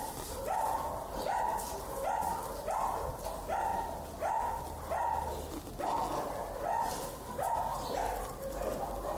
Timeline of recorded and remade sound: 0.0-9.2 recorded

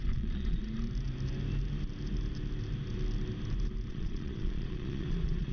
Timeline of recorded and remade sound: 0.0-0.6 remade; 0.6-3.9 recorded; 3.9-5.5 remade

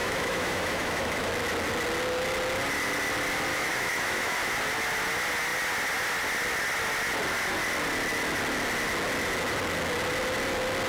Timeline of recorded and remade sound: 0.0-1.3 remade; 1.3-3.5 recorded; 3.5-4.5 remade; 4.5-10.9 recorded